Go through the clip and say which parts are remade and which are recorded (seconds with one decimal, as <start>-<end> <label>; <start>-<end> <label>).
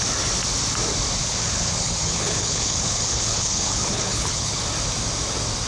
0.0-1.2 recorded; 1.2-4.6 remade; 4.6-5.7 recorded